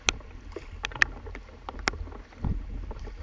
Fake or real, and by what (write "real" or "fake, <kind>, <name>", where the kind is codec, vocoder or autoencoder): real